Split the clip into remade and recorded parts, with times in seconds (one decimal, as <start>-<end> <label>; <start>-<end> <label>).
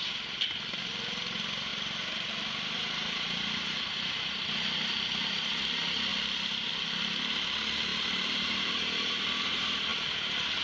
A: 0.0-1.7 recorded; 1.7-4.1 remade; 4.1-6.1 recorded; 6.1-6.7 remade; 6.7-7.9 recorded; 7.9-8.7 remade; 8.7-10.6 recorded